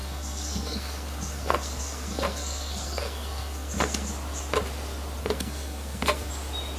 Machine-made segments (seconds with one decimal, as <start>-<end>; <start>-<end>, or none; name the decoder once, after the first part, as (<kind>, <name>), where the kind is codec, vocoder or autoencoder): 0.0-4.1 (codec, SNAC); 5.2-6.3